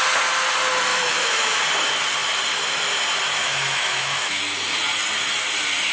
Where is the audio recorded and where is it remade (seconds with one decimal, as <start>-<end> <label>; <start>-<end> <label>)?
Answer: 0.0-0.9 recorded; 0.9-1.6 remade; 1.6-3.4 recorded; 3.4-4.4 remade; 4.4-5.9 recorded